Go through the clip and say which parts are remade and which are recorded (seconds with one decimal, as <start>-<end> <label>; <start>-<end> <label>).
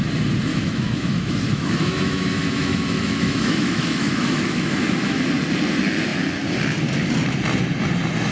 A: 0.0-0.5 recorded; 0.5-5.3 remade; 5.3-8.3 recorded